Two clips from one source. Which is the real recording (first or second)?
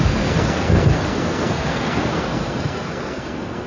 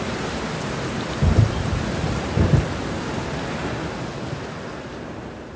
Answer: second